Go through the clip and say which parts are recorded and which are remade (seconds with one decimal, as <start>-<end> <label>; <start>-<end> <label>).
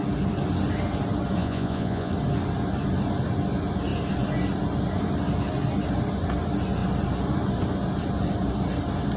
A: 0.0-1.4 recorded; 1.4-2.1 remade; 2.1-9.2 recorded